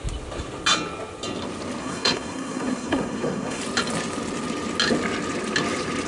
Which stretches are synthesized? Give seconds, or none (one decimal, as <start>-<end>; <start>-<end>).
1.8-3.6

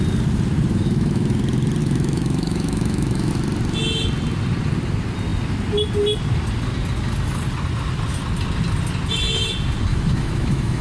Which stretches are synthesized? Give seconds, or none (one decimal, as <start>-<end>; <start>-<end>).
0.7-1.4; 1.8-3.3; 9.9-10.8

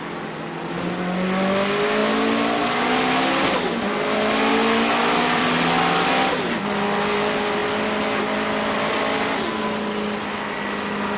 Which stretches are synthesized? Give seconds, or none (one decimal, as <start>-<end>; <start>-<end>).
5.0-5.5